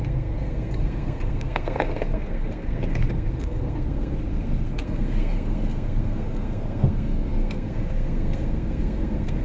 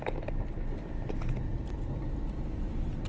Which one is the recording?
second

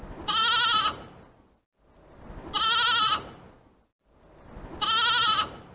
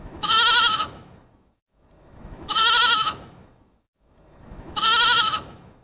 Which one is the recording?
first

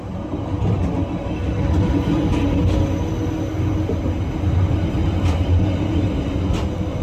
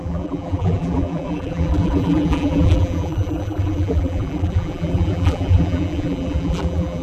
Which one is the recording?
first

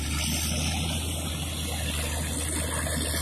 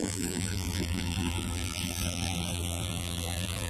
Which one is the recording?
first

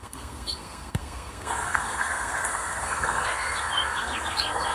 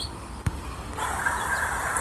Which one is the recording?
second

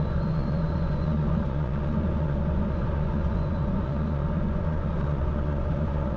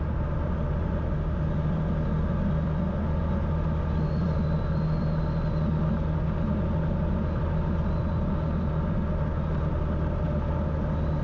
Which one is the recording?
second